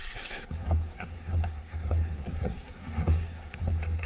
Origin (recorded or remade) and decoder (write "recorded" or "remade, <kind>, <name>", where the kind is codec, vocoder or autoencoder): remade, codec, SNAC